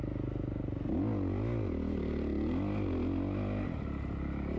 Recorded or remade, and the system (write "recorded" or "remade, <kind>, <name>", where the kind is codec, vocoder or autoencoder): recorded